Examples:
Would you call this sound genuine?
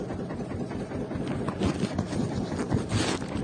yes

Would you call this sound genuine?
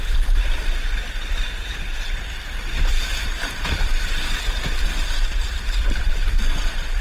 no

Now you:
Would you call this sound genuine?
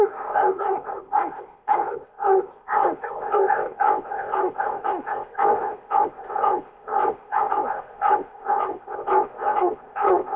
no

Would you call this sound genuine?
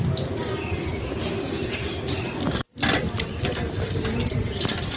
yes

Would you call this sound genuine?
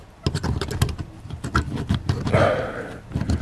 yes